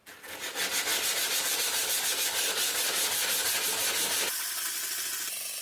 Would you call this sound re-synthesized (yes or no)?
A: no